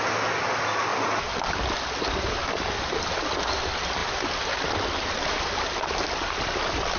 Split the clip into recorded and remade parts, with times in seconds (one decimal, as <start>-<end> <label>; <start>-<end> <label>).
0.0-4.0 recorded; 4.0-5.1 remade; 5.1-7.0 recorded